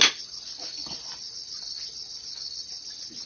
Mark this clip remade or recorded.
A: recorded